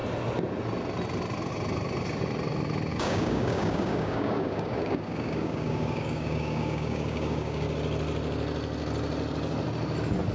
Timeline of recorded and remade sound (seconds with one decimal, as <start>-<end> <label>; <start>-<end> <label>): 0.0-2.9 recorded; 2.9-7.7 remade; 7.7-10.3 recorded